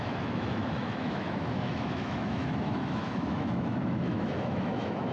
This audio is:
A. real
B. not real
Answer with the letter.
B